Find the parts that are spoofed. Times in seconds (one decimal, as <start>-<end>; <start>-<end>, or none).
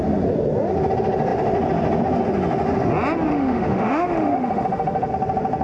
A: 3.3-5.1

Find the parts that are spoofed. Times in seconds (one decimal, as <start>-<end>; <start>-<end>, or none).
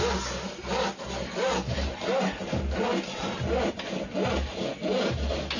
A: none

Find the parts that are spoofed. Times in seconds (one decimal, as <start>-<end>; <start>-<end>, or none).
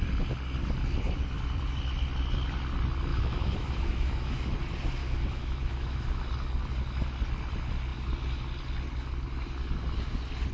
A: 3.1-4.5; 5.0-6.2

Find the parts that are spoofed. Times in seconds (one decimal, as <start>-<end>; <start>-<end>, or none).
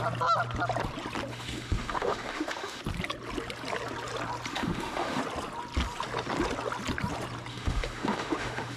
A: 1.3-2.8; 4.5-5.2; 7.5-8.8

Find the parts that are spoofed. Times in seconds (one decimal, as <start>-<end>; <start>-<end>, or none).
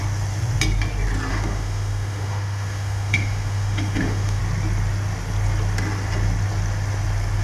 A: 1.3-4.4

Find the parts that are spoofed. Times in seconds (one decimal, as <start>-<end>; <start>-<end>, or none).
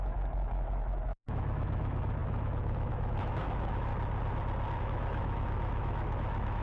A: 0.0-3.9; 4.8-6.6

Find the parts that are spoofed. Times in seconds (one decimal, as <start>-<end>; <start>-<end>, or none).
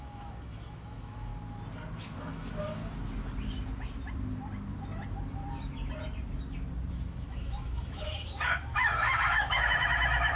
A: 0.0-1.3; 2.0-2.8; 6.9-10.4